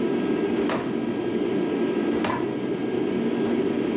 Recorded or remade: recorded